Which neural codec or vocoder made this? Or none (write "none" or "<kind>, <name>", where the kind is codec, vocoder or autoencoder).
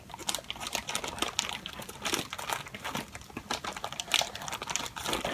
vocoder, BigVGAN v2